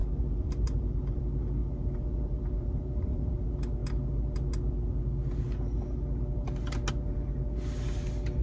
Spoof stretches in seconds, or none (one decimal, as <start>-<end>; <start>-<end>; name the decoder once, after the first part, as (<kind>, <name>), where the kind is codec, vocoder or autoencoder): 0.0-1.2 (vocoder, BigVGAN v2); 1.6-3.3